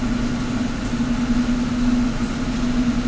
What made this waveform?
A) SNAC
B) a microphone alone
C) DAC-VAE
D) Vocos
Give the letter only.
B